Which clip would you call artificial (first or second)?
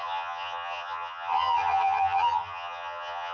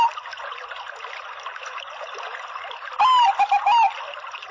first